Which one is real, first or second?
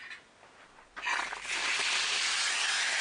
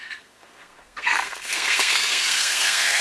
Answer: first